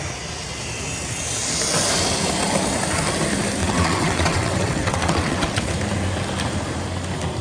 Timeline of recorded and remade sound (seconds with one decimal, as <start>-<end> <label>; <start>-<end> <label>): 0.0-3.6 recorded; 3.6-5.7 remade; 5.7-7.4 recorded